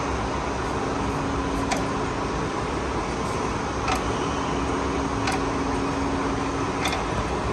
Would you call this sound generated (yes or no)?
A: no